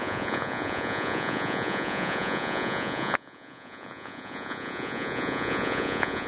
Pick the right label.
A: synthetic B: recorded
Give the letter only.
A